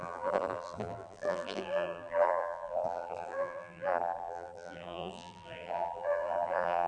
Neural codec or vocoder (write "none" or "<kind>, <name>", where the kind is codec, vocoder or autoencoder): vocoder, BigVGAN v2